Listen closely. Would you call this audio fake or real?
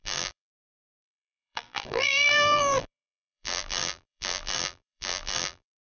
fake